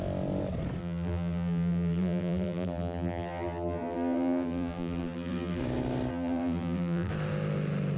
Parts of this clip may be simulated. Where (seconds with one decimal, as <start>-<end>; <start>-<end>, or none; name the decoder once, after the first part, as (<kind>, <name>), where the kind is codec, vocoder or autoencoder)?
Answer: 0.8-5.6 (vocoder, BigVGAN v2); 6.1-7.1